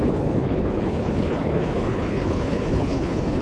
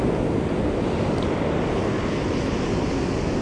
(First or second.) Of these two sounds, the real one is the second